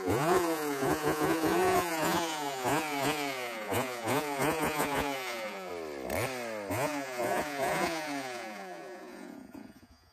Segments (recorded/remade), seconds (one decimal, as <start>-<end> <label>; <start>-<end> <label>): 0.0-5.7 remade; 5.7-6.7 recorded; 6.7-10.1 remade